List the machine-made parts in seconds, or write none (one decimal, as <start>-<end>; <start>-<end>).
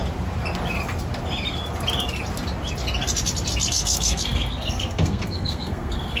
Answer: 3.7-6.2